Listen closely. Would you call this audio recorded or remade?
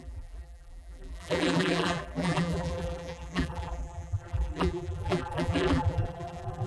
remade